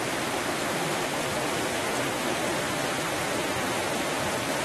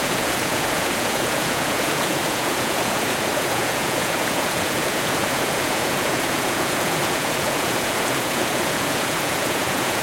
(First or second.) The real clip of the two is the first